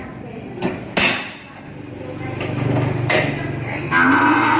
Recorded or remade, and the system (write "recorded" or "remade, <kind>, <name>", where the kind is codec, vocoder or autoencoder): recorded